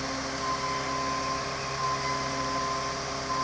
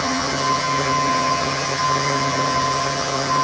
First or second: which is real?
first